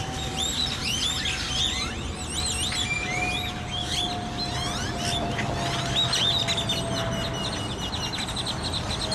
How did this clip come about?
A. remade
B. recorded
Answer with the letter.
B